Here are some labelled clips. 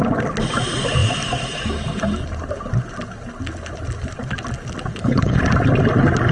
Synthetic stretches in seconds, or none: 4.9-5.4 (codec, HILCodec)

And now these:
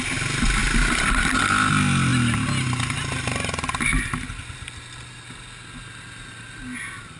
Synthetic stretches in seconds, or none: none

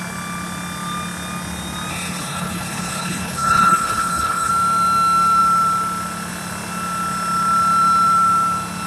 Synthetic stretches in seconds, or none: 1.9-4.5 (codec, HILCodec)

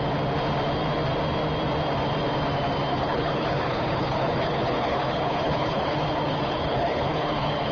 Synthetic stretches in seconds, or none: 2.9-7.7 (codec, HILCodec)

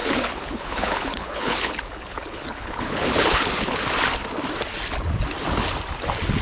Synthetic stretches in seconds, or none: 0.0-3.8 (codec, HILCodec)